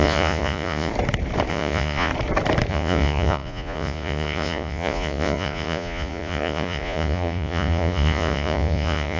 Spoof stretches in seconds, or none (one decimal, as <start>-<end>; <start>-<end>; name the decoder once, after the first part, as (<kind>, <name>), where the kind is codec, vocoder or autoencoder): 0.0-0.9 (vocoder, Vocos); 1.5-2.1; 2.7-9.2